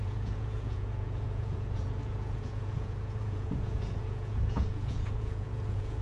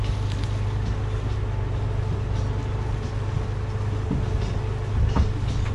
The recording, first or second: second